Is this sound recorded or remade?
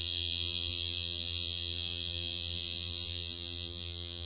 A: remade